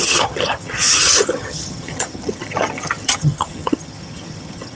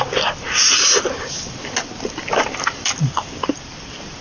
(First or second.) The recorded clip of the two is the second